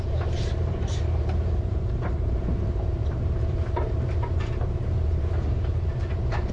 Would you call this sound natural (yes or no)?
no